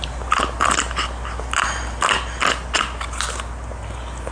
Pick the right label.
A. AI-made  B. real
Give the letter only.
B